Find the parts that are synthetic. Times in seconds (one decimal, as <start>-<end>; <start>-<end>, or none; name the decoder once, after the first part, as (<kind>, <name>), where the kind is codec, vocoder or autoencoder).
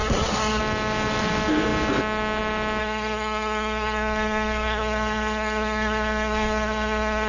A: 0.0-0.6 (codec, SNAC); 2.8-7.3